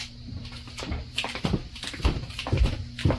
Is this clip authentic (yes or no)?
yes